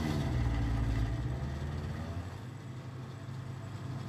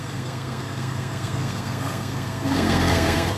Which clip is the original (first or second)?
first